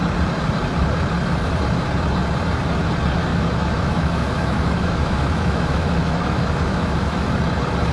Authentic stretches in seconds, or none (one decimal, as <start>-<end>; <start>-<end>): 0.0-3.3; 7.3-7.9